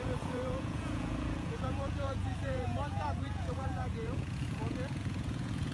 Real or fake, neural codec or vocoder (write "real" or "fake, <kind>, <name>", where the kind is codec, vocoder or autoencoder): fake, vocoder, Vocos